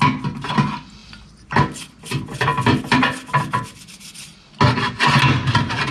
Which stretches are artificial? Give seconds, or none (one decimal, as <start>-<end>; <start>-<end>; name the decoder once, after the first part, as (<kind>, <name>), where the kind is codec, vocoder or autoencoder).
none

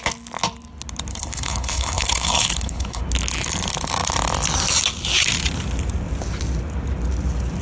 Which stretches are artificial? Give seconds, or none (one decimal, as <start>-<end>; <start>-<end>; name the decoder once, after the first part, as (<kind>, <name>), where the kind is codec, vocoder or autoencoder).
1.1-3.0 (codec, HILCodec)